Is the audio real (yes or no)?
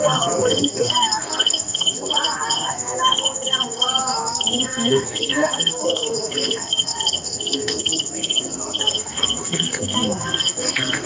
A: no